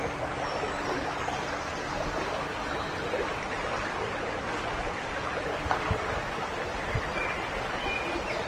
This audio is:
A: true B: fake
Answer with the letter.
A